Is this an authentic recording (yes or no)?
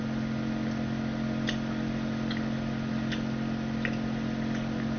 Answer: yes